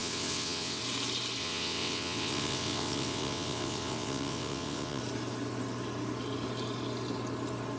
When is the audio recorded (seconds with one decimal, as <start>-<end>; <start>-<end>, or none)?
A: 0.8-1.4; 5.0-7.8